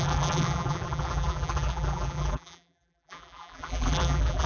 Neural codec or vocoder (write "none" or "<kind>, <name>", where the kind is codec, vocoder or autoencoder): vocoder, BigVGAN v2